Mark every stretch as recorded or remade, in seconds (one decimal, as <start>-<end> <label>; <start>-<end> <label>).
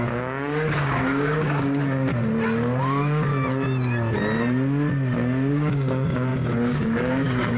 0.0-2.1 remade; 2.1-2.8 recorded; 2.8-3.3 remade; 3.3-5.5 recorded; 5.5-7.6 remade